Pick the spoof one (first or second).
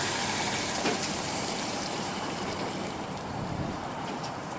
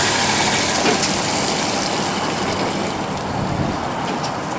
first